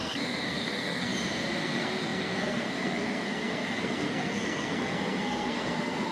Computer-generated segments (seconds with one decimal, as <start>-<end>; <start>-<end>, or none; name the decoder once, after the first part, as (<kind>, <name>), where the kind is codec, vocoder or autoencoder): 0.0-1.1 (codec, SNAC); 1.6-6.1